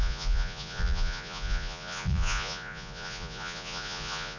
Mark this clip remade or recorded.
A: remade